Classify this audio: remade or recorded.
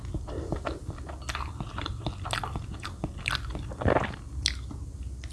recorded